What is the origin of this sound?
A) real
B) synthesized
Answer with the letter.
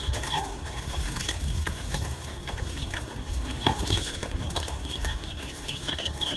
B